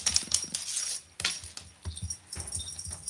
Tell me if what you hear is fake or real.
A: real